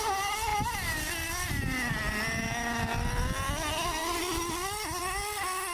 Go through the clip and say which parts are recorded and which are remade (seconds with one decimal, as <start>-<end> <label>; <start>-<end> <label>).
0.0-5.7 recorded

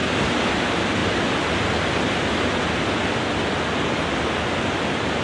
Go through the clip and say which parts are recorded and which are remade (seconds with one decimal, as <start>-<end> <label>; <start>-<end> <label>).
0.0-0.5 remade; 0.5-5.2 recorded

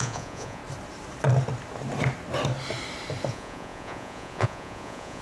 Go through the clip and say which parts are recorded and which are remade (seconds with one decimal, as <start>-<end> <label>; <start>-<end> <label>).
0.0-0.6 remade; 0.6-3.3 recorded; 3.3-5.2 remade

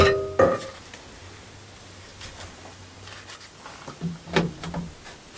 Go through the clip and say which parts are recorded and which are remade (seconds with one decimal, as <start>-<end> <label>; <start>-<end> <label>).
0.0-2.1 recorded; 2.1-4.6 remade; 4.6-5.4 recorded

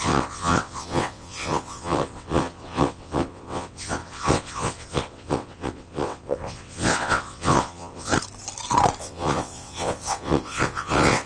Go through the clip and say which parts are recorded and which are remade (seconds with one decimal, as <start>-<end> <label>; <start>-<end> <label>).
0.0-8.1 remade; 8.1-9.0 recorded; 9.0-11.3 remade